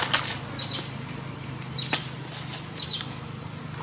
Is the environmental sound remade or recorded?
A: recorded